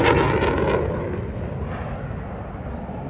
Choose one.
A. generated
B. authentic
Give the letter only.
B